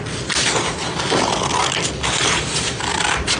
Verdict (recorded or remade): remade